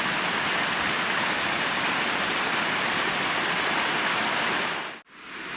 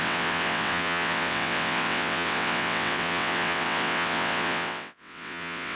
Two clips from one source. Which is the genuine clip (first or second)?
first